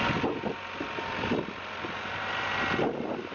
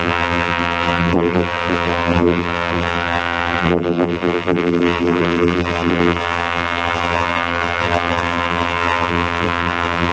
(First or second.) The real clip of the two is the first